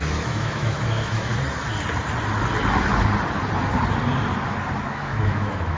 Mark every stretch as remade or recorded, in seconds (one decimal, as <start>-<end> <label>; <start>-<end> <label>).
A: 0.0-1.3 remade; 1.3-4.8 recorded; 4.8-5.8 remade